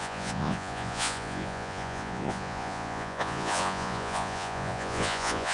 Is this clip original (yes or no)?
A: no